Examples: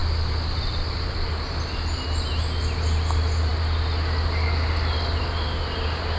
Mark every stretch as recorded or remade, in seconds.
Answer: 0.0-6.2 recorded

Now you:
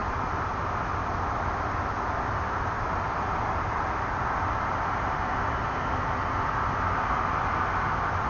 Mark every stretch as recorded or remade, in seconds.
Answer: 0.0-8.3 recorded

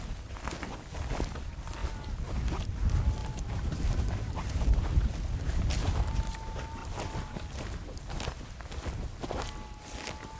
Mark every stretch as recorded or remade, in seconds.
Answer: 0.0-3.2 recorded; 3.2-5.7 remade; 5.7-10.4 recorded

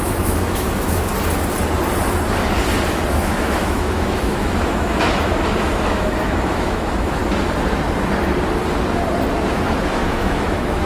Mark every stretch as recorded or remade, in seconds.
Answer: 0.0-1.1 remade; 1.1-3.1 recorded; 3.1-7.2 remade; 7.2-9.5 recorded; 9.5-10.9 remade

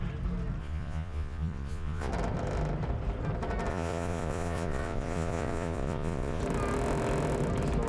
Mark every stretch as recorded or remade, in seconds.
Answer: 0.0-0.6 recorded; 0.6-2.1 remade; 2.1-3.7 recorded; 3.7-6.4 remade; 6.4-7.9 recorded

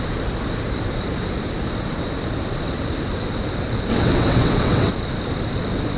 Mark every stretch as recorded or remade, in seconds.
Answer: 0.0-3.9 recorded; 3.9-4.9 remade; 4.9-6.0 recorded

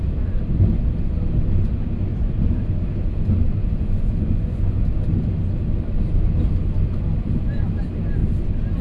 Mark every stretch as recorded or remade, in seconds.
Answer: 0.0-2.1 recorded; 2.1-2.7 remade; 2.7-3.6 recorded; 3.6-4.7 remade; 4.7-8.8 recorded

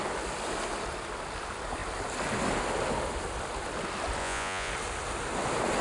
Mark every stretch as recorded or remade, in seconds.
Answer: 0.0-4.2 recorded; 4.2-4.7 remade; 4.7-5.8 recorded